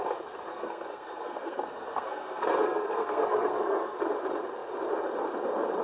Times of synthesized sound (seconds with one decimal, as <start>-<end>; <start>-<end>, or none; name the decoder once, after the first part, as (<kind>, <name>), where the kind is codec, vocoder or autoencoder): 0.5-4.0 (codec, SNAC)